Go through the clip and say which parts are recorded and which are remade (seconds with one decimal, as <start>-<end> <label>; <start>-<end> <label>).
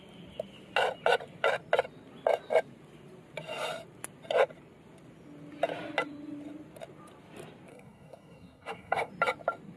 0.0-7.7 recorded; 7.7-9.1 remade; 9.1-9.8 recorded